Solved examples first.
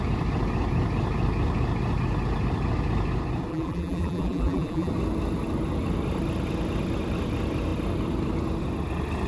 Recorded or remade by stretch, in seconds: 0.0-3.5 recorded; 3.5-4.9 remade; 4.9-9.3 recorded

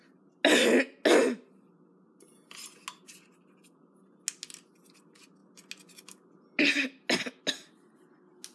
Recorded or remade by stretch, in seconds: 0.0-8.5 recorded

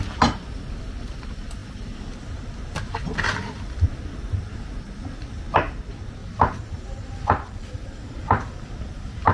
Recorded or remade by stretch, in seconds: 0.0-6.2 recorded; 6.2-8.7 remade; 8.7-9.3 recorded

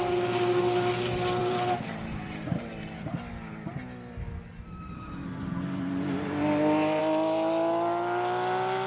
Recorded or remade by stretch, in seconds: 0.0-1.4 recorded; 1.4-3.1 remade; 3.1-8.9 recorded

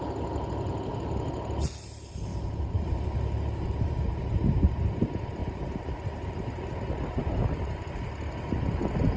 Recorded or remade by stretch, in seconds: 0.0-2.3 recorded; 2.3-4.0 remade; 4.0-5.4 recorded; 5.4-6.7 remade; 6.7-9.2 recorded

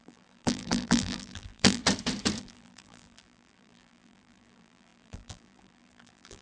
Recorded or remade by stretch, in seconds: 0.0-1.8 remade; 1.8-2.4 recorded; 2.4-6.4 remade

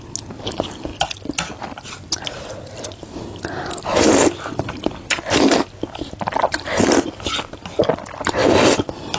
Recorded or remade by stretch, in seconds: 0.0-8.4 recorded; 8.4-9.2 remade